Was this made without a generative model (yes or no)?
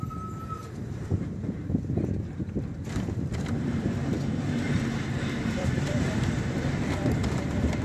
no